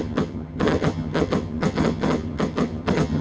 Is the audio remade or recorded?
remade